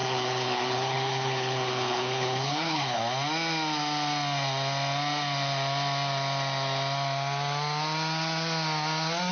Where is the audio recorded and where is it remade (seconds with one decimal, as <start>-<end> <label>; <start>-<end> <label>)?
0.0-3.0 remade; 3.0-9.3 recorded